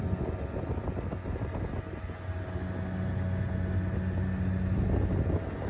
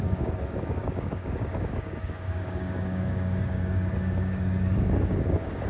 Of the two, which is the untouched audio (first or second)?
first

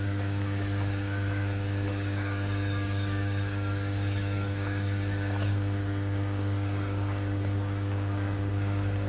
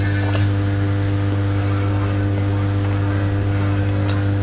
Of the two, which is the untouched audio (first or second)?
second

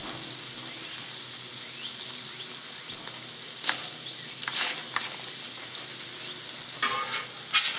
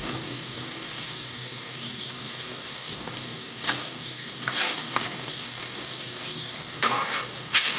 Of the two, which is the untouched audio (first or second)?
first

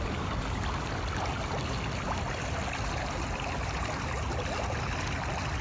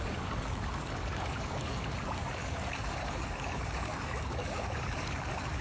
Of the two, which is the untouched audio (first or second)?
first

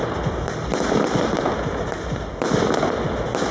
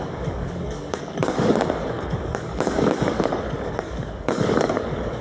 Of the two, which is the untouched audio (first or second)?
first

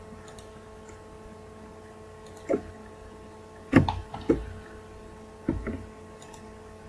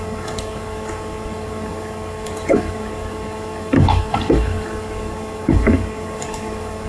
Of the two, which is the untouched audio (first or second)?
first